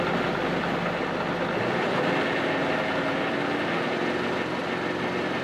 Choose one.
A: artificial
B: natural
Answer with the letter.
B